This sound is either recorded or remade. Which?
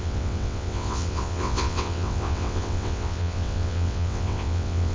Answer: remade